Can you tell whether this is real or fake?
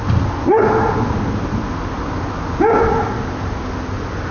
real